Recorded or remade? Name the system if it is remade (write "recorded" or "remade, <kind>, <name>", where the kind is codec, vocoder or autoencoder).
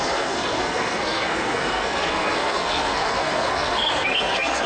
remade, codec, SNAC